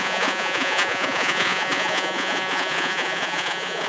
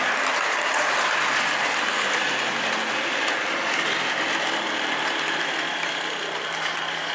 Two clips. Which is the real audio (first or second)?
second